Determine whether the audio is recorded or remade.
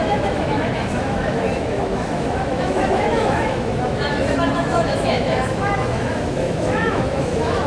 remade